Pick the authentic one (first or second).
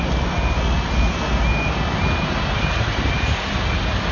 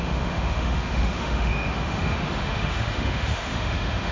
first